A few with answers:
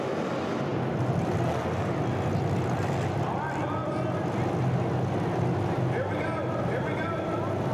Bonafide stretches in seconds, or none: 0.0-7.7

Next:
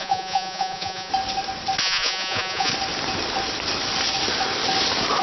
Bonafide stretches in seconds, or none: 1.1-1.8; 2.7-5.2